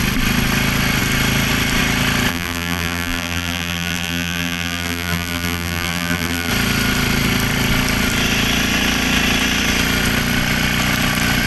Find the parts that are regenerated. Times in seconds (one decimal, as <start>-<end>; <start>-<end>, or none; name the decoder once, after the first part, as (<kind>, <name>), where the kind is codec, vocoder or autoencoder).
2.3-6.5 (vocoder, BigVGAN v2)